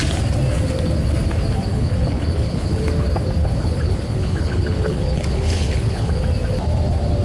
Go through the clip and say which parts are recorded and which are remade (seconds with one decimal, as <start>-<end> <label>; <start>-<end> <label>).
0.0-1.7 recorded; 1.7-2.8 remade; 2.8-3.4 recorded; 3.4-6.2 remade; 6.2-7.2 recorded